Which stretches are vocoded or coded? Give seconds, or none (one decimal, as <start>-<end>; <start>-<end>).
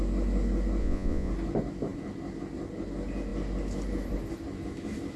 0.8-1.3